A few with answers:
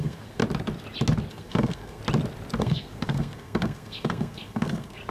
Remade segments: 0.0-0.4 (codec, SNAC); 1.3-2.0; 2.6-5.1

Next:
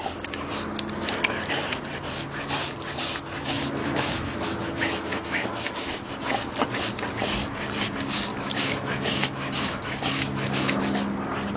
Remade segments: 3.8-6.1 (autoencoder, DAC-VAE); 8.3-10.8

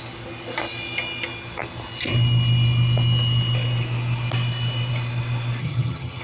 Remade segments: 5.6-6.2 (vocoder, HiFi-GAN)

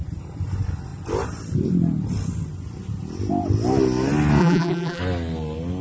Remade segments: 4.4-5.0 (vocoder, BigVGAN v2)